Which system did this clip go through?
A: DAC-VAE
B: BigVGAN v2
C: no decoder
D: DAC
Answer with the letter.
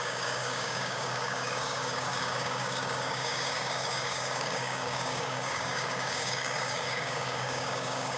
D